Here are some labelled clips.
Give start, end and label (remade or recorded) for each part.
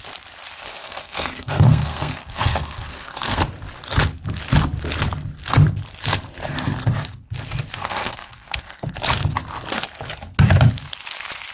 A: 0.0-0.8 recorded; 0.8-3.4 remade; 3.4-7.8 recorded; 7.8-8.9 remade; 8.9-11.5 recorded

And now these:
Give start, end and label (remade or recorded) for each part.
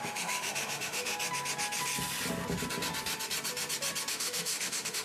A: 0.0-1.1 remade; 1.1-4.1 recorded; 4.1-5.0 remade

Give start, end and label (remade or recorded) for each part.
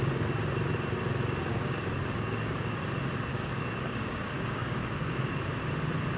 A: 0.0-1.5 recorded; 1.5-2.8 remade; 2.8-3.3 recorded; 3.3-5.3 remade; 5.3-6.2 recorded